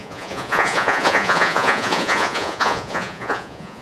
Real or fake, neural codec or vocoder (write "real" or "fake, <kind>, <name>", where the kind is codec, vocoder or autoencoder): fake, vocoder, Vocos